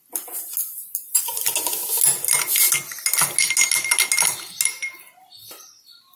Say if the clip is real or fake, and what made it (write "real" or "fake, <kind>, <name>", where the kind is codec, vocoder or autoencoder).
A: real